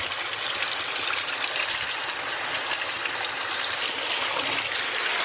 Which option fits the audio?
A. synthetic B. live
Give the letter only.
B